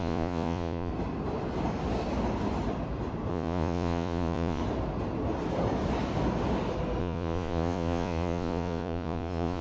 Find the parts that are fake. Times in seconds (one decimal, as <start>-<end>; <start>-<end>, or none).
0.0-0.9; 3.3-4.6; 7.0-9.6